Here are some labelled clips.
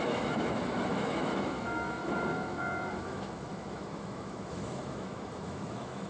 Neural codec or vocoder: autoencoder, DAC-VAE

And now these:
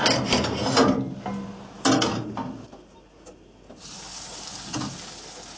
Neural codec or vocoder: none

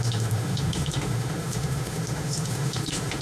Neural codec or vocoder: autoencoder, DAC-VAE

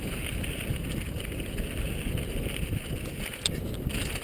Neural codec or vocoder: none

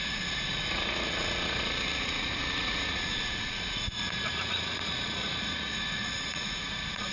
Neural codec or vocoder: vocoder, Vocos